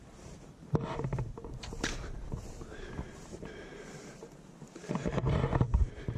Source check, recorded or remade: remade